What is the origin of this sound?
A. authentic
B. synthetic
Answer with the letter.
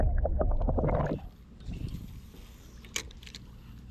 A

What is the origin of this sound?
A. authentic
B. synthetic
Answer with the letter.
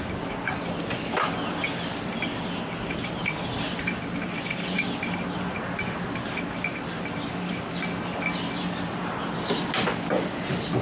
A